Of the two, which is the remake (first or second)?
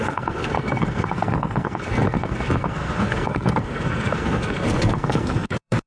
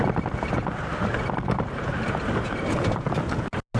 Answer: first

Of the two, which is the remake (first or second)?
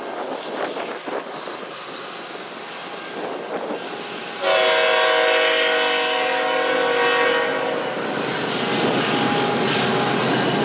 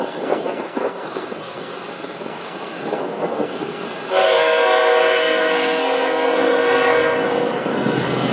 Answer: second